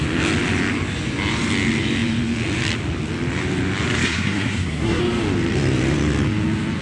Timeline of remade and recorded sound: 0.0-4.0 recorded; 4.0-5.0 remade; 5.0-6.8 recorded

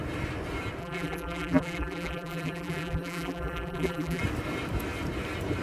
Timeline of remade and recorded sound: 0.0-0.8 recorded; 0.8-4.2 remade; 4.2-5.6 recorded

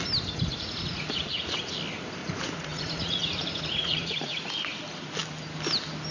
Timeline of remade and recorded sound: 0.0-0.5 recorded; 0.5-1.6 remade; 1.6-2.2 recorded; 2.2-4.5 remade; 4.5-6.1 recorded

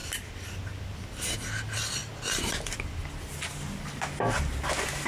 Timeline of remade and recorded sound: 0.0-5.1 recorded

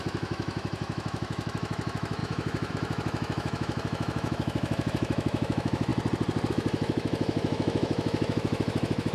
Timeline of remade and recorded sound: 0.0-5.9 remade; 5.9-6.5 recorded; 6.5-9.1 remade

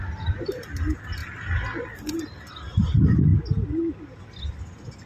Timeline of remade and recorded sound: 0.0-5.1 recorded

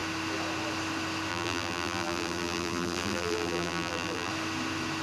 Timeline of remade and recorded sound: 0.0-1.3 recorded; 1.3-4.3 remade; 4.3-5.0 recorded